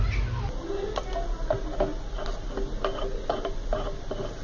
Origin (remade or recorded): recorded